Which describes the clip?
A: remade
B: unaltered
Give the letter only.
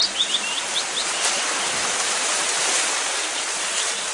B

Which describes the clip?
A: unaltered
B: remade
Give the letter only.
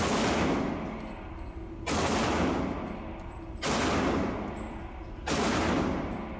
A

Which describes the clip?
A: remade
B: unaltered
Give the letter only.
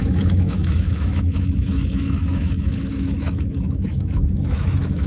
A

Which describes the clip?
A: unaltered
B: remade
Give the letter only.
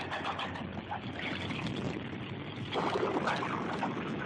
A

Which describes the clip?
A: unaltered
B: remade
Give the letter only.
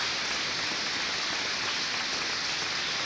A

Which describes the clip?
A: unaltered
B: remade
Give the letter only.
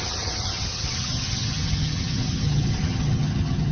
B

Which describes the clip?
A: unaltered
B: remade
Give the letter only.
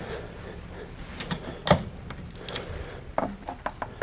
A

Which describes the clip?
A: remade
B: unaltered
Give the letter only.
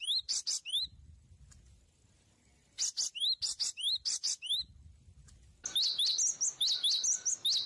B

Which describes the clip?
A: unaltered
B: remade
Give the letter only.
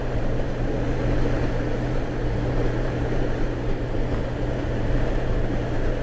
B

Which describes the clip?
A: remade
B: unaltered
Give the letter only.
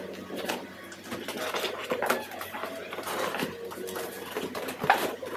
B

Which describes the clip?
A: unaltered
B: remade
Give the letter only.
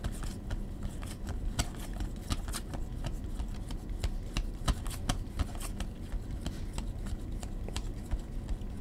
A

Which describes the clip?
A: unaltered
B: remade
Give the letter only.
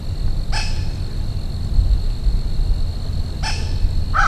A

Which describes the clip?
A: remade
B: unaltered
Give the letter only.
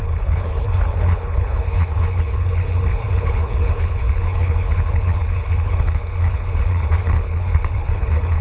A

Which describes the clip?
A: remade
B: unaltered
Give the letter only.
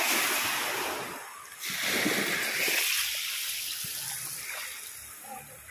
B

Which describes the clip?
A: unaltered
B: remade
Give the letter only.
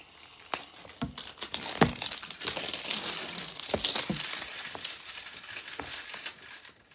A